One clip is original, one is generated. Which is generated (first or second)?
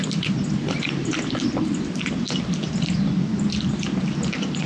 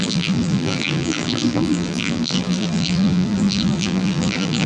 second